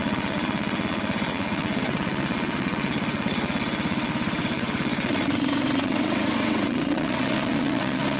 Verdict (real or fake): fake